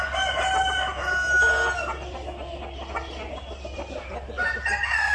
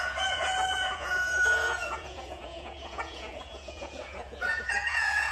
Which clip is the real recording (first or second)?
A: first